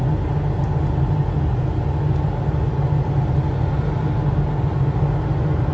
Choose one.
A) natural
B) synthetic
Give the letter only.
A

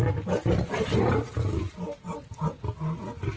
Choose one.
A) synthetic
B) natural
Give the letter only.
B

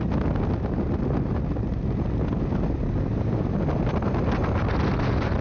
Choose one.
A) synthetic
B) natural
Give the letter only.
B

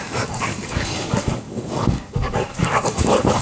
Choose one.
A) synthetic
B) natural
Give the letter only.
A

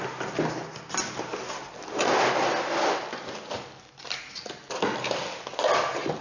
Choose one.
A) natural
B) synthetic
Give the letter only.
A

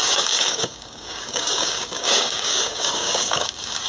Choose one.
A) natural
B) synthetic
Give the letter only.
B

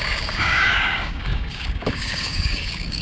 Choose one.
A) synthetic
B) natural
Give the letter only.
A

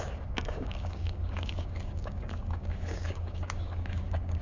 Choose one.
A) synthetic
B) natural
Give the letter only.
A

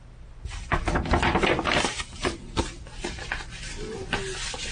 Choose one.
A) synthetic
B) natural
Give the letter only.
B